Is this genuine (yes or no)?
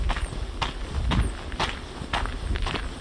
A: yes